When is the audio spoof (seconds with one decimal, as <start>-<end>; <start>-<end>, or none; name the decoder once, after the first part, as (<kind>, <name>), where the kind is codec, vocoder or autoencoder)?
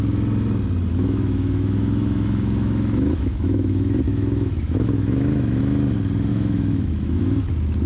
0.9-5.6 (autoencoder, DAC-VAE); 6.3-7.4